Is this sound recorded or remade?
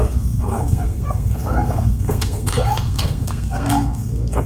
remade